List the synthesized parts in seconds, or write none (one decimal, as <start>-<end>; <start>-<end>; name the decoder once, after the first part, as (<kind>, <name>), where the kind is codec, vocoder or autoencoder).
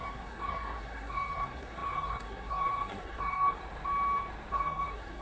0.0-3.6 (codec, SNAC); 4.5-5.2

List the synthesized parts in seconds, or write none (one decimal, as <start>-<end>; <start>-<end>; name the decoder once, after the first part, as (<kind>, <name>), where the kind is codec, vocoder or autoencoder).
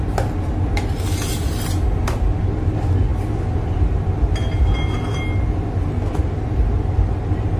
none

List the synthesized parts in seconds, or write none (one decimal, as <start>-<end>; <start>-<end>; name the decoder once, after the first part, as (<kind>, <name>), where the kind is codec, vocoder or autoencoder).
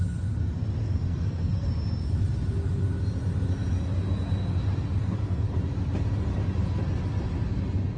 0.8-1.7 (codec, SNAC); 5.0-5.5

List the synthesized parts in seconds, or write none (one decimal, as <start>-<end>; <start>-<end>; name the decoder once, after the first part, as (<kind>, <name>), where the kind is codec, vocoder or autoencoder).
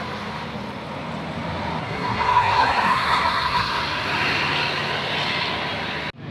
1.8-3.8 (codec, SNAC)